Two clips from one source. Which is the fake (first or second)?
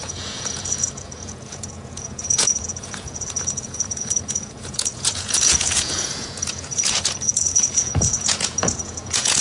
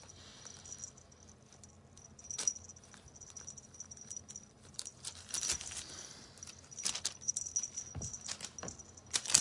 first